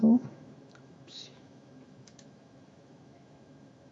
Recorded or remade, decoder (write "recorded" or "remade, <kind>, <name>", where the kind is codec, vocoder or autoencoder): remade, autoencoder, DAC-VAE